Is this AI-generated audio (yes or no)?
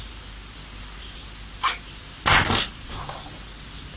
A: no